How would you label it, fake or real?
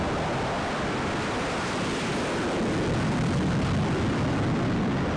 real